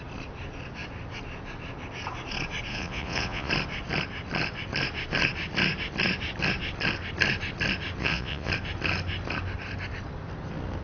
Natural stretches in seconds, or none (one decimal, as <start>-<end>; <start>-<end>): 0.0-2.7; 3.5-8.0; 8.5-10.8